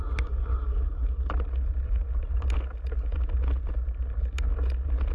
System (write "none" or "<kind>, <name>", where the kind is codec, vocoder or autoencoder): none